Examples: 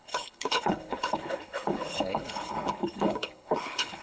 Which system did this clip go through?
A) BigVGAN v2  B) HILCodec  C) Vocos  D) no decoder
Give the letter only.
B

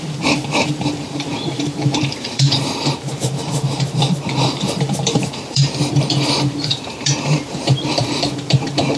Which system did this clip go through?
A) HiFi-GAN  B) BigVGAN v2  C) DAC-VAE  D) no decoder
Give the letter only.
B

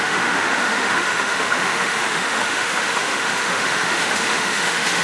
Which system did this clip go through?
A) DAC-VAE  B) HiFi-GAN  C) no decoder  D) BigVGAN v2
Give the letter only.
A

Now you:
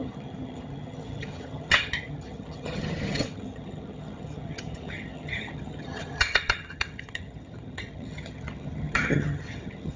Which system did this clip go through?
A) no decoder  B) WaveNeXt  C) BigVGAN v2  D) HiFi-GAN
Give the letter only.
D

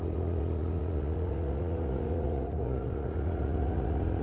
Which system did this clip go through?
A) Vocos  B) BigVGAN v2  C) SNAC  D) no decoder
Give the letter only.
A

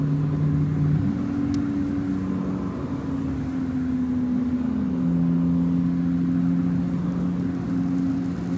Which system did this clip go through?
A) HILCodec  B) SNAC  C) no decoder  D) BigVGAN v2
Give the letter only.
C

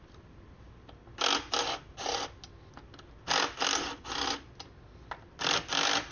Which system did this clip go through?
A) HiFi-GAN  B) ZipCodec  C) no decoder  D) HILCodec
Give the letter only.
C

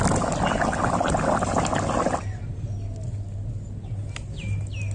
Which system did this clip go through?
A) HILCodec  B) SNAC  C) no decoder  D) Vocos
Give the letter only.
C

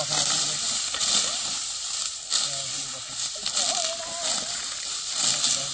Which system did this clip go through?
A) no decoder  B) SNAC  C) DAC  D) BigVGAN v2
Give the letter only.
A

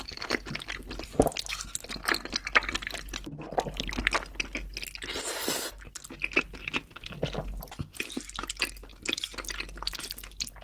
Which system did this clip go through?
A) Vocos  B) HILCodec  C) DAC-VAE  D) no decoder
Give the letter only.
D